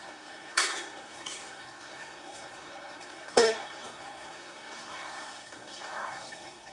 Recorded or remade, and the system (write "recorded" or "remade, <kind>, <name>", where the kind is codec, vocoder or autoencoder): remade, codec, SNAC